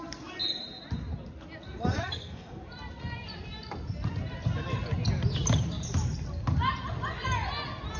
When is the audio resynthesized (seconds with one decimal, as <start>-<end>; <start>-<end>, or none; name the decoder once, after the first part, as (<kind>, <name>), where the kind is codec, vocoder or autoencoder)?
1.9-2.6 (codec, SNAC)

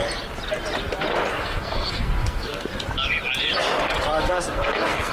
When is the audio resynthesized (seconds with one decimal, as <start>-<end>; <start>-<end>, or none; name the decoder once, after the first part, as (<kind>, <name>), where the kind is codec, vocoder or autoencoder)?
1.3-2.7 (codec, SNAC); 4.2-5.1

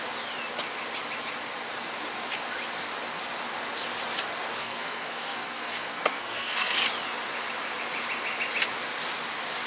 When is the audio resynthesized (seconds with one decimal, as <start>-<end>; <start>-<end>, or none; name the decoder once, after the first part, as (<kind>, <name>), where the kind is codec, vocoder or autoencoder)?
4.6-6.8 (codec, SNAC)

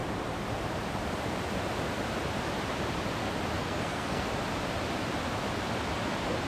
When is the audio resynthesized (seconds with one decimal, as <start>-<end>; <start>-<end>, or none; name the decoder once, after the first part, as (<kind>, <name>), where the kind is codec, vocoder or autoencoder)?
3.6-4.3 (codec, SNAC)